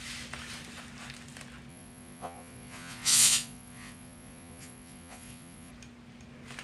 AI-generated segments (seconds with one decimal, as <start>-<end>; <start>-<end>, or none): 1.7-5.7